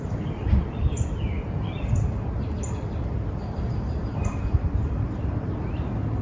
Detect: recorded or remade remade